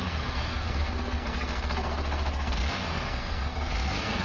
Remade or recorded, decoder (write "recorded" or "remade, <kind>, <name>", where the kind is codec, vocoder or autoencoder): remade, codec, SNAC